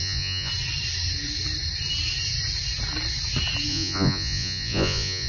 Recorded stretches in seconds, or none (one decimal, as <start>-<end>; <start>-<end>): 0.5-3.7